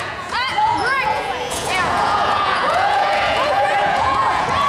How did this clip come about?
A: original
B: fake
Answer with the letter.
B